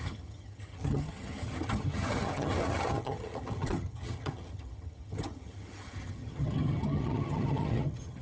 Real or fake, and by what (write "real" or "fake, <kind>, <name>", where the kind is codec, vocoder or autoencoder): fake, vocoder, HiFi-GAN